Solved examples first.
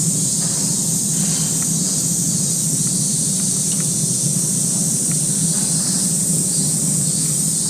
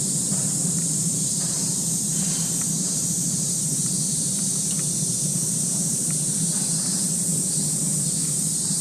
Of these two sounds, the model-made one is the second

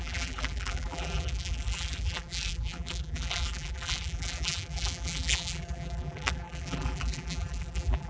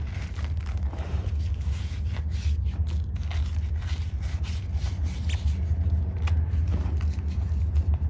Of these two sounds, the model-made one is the first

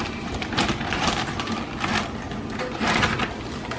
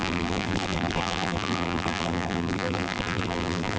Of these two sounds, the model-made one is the second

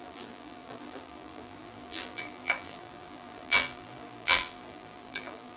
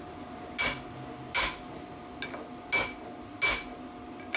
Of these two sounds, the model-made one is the first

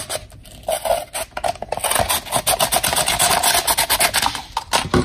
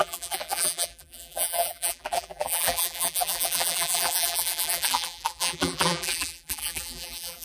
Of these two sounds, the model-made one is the second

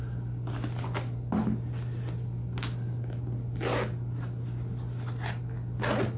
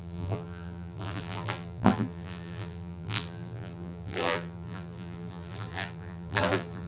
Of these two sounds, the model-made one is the second